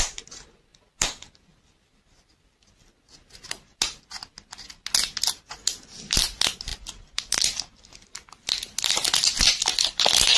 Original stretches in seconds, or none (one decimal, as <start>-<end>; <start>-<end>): 0.0-10.4